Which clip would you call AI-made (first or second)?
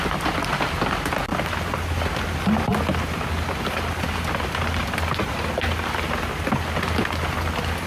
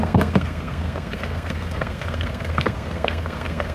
second